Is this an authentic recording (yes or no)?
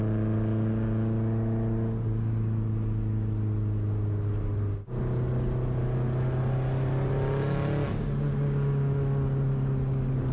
yes